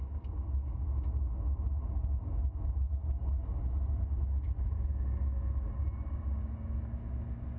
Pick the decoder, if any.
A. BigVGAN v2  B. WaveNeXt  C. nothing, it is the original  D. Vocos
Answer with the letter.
C